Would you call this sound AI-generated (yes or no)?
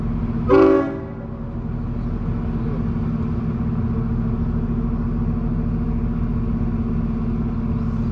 no